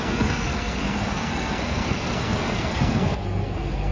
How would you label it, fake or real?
fake